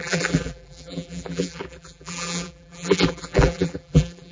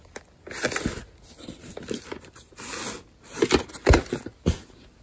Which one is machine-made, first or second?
first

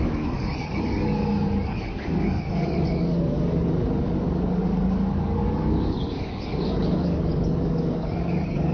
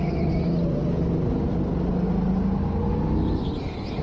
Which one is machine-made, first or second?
first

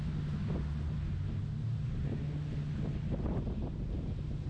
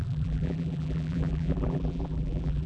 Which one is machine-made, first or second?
second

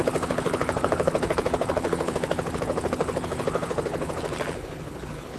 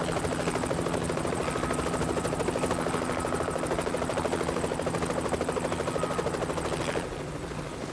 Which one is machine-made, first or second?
first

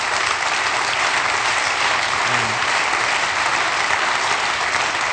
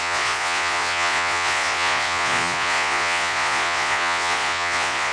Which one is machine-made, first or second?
second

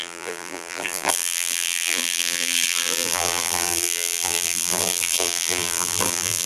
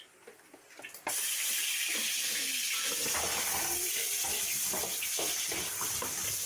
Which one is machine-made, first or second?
first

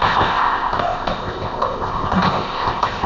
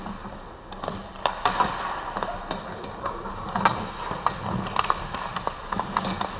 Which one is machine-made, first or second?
first